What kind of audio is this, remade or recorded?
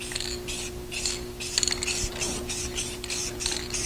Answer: recorded